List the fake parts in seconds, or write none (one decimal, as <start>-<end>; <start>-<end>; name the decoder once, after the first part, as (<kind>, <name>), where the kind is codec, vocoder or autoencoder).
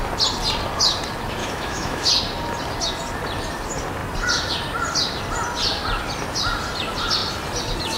1.4-2.1 (autoencoder, DAC-VAE)